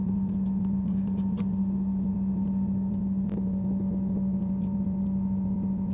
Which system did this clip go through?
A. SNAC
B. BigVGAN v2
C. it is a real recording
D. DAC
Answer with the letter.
C